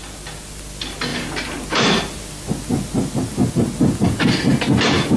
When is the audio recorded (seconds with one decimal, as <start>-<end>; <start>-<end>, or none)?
0.0-5.2